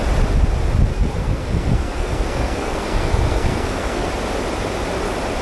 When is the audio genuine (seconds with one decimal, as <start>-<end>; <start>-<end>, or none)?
0.0-0.9; 4.1-5.4